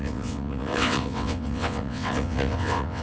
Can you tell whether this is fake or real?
fake